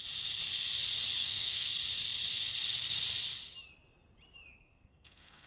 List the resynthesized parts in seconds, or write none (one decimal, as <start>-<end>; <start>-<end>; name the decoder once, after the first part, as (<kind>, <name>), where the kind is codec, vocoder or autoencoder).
1.2-1.7 (codec, SNAC); 4.5-5.5